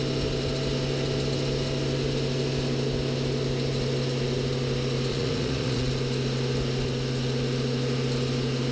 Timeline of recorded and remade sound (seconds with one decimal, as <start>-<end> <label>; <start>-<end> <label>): 0.0-5.1 recorded; 5.1-5.9 remade; 5.9-8.7 recorded